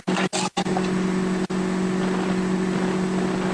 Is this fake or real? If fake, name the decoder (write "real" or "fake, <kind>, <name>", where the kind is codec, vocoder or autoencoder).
real